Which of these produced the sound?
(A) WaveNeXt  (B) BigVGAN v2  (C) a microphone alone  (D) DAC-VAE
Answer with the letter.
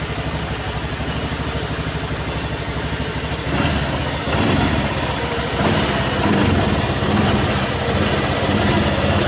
C